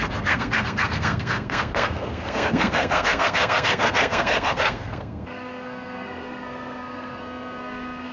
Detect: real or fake fake